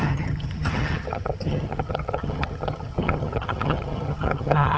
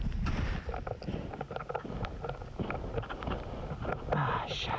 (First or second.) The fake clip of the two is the first